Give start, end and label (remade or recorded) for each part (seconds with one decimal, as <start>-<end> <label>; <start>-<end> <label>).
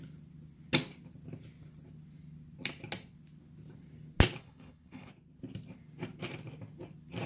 0.0-4.4 recorded; 4.4-5.1 remade; 5.1-7.3 recorded